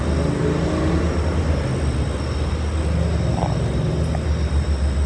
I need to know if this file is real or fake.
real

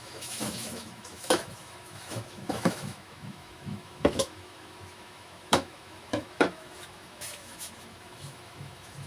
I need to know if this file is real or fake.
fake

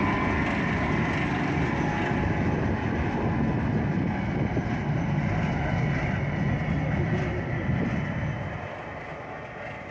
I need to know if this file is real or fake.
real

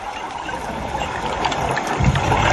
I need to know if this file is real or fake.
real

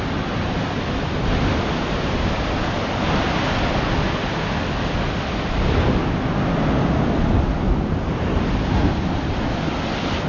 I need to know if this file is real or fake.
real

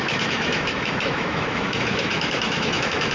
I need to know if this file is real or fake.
fake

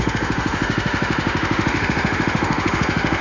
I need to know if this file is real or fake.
fake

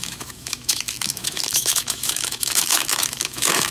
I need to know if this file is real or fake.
fake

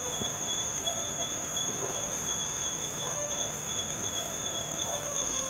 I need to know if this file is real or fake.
fake